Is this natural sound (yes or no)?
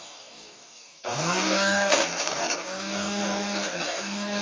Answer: no